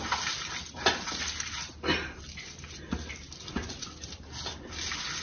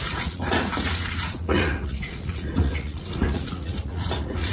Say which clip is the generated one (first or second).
second